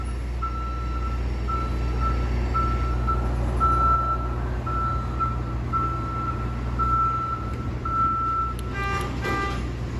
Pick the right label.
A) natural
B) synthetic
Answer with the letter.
A